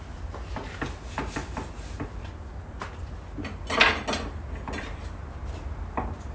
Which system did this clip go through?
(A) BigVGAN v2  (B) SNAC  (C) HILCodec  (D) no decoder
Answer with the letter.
D